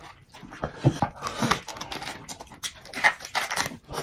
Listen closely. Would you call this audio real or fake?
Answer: real